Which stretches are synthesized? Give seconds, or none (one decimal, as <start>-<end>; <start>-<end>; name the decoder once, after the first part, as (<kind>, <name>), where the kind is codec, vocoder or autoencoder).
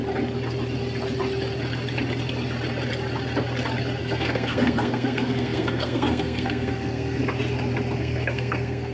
4.0-7.2 (codec, SNAC); 8.0-8.9